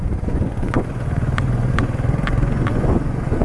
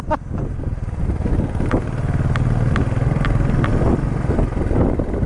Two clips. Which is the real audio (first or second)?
second